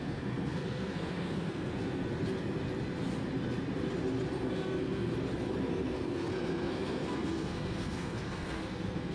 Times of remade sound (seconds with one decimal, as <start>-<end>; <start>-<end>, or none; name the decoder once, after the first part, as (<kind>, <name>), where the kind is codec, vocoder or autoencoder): 0.0-2.0 (codec, SNAC); 4.5-5.1; 5.7-9.1